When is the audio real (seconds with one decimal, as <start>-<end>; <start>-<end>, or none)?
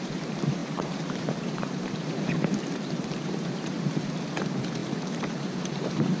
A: none